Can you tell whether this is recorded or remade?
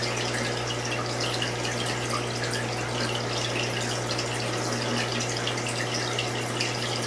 recorded